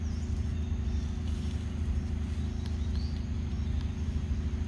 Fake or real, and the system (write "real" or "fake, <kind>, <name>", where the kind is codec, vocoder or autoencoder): real